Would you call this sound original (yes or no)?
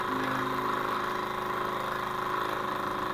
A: yes